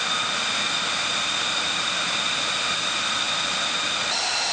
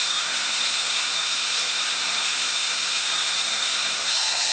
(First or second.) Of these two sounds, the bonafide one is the first